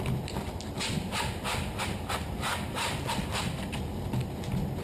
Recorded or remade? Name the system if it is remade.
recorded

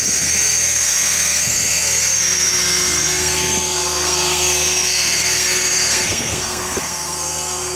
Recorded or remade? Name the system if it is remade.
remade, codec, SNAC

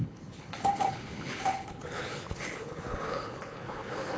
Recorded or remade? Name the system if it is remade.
remade, codec, HILCodec